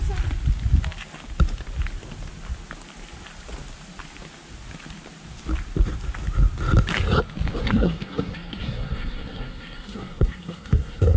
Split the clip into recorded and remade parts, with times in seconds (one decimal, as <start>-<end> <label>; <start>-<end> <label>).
0.0-7.6 recorded; 7.6-11.2 remade